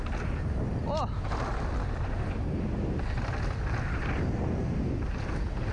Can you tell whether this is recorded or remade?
recorded